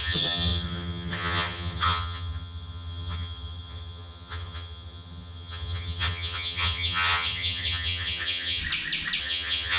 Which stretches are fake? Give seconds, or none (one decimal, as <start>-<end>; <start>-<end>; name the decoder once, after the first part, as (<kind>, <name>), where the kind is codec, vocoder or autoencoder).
0.0-8.6 (vocoder, HiFi-GAN); 9.2-9.8